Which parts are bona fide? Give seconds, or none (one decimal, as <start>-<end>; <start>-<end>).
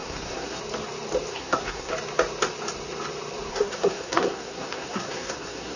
0.6-1.3; 1.9-3.5